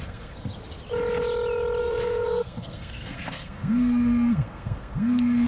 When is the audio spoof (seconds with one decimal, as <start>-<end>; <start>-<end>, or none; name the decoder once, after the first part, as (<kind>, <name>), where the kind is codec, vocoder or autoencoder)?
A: 0.0-0.5 (codec, SNAC); 1.8-5.5